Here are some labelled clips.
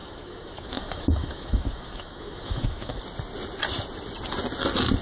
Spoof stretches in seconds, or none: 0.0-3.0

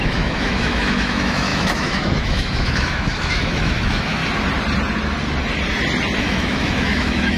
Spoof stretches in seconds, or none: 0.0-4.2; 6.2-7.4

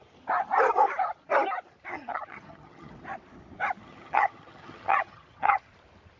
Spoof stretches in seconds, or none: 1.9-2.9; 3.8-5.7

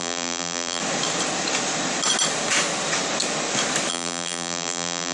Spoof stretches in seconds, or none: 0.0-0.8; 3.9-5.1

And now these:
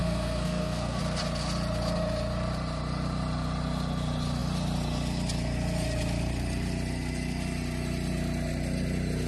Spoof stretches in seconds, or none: 0.0-1.0